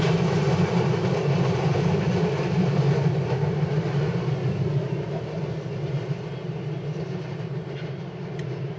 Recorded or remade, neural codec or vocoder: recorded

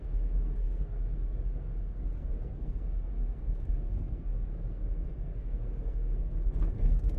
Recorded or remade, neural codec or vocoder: remade, codec, SNAC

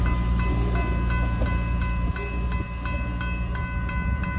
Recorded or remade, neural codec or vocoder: recorded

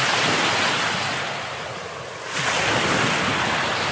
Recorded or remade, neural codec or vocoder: recorded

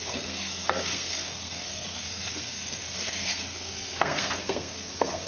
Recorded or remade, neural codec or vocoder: remade, codec, SNAC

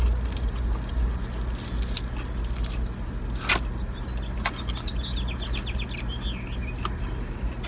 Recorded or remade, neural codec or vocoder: recorded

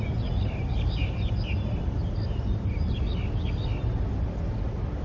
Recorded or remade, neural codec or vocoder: recorded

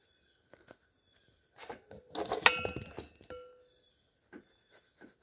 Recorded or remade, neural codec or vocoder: recorded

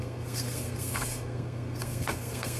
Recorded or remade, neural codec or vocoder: remade, codec, SNAC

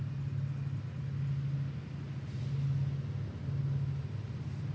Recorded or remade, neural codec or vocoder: recorded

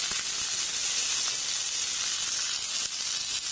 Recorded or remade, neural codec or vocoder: recorded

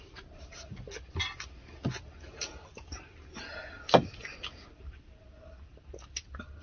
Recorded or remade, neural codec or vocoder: recorded